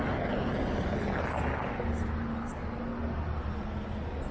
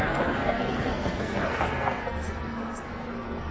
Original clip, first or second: first